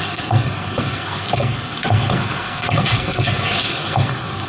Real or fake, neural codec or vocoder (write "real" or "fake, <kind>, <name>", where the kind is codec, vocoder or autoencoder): fake, codec, SNAC